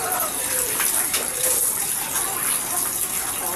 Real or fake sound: real